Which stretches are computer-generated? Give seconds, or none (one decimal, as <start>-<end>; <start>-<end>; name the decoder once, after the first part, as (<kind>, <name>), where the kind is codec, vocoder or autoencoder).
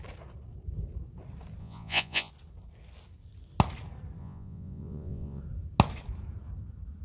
1.6-2.3 (vocoder, Vocos); 4.2-5.4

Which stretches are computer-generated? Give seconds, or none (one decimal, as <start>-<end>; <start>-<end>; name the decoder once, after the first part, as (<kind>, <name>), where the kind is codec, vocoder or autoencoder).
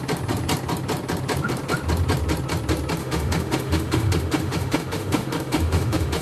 3.0-6.2 (autoencoder, DAC-VAE)